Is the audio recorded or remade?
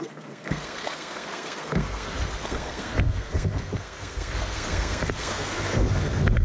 remade